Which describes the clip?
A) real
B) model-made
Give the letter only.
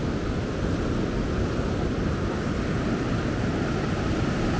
A